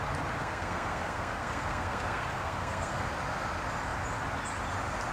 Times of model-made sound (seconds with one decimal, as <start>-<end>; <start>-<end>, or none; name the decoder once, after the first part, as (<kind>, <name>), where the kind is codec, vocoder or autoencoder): 0.4-3.1 (codec, SNAC)